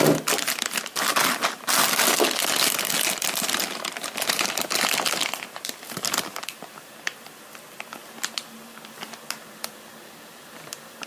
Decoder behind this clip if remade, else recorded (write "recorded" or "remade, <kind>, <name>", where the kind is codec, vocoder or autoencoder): recorded